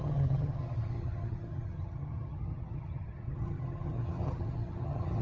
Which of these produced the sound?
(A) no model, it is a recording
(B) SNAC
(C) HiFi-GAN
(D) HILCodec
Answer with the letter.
C